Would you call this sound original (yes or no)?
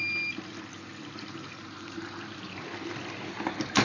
yes